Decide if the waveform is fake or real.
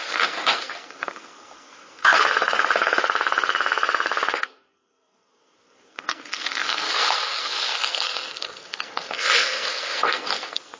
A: fake